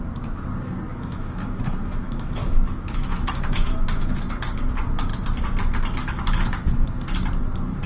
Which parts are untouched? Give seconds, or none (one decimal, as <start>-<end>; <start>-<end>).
0.0-0.9; 4.2-7.9